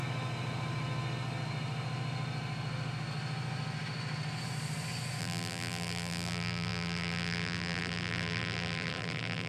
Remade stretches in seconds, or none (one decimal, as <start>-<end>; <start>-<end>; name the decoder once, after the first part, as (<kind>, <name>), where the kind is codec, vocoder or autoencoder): 5.2-9.5 (vocoder, BigVGAN v2)